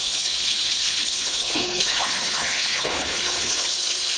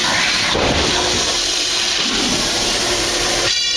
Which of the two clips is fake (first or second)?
first